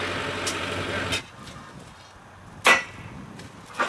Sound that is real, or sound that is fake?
real